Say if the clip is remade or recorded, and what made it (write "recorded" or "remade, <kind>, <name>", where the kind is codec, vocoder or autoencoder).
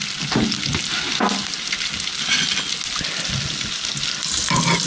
recorded